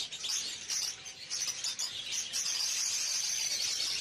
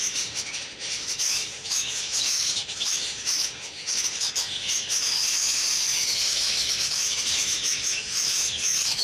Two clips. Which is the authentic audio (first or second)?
first